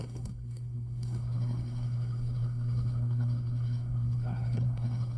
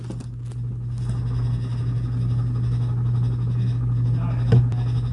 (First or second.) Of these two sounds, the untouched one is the second